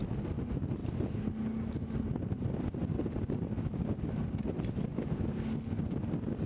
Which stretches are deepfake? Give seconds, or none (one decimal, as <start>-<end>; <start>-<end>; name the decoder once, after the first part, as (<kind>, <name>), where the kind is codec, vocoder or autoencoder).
none